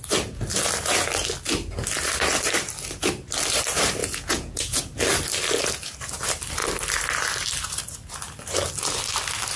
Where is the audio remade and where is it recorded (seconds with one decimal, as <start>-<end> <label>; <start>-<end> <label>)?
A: 0.0-4.0 recorded; 4.0-4.8 remade; 4.8-9.6 recorded